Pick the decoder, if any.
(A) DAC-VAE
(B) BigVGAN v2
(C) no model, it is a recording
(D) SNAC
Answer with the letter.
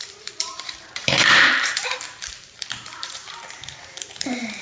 B